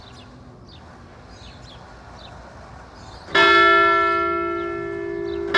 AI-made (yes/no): no